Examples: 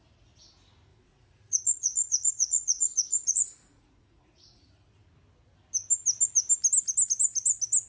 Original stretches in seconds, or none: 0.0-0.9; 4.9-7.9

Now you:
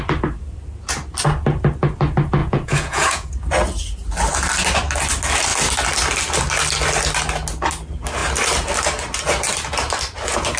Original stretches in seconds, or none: 0.0-2.4; 3.3-10.6